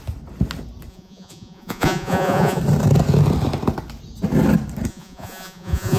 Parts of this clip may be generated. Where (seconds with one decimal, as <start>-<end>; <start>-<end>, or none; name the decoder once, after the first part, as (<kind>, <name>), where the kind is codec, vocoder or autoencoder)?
0.9-2.6 (vocoder, Vocos); 4.9-6.0